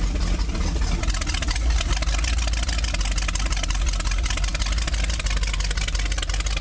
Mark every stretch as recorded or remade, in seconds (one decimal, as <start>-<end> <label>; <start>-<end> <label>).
0.0-6.6 recorded